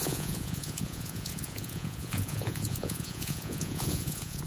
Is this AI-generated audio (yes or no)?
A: yes